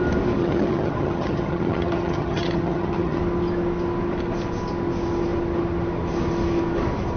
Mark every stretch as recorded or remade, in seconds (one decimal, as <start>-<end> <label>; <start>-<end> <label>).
0.0-0.4 recorded; 0.4-3.2 remade; 3.2-7.2 recorded